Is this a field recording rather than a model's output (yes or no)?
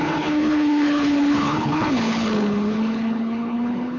no